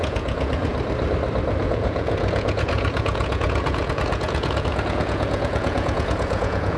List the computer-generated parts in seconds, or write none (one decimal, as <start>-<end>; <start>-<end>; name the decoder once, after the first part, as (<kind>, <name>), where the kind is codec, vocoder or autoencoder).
0.0-0.7 (vocoder, Vocos); 1.6-6.8